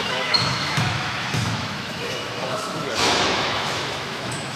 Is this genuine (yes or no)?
no